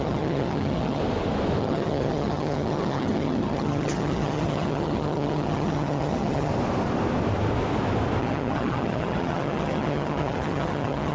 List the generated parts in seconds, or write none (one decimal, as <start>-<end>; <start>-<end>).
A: 0.0-1.0; 1.6-6.5; 8.2-11.1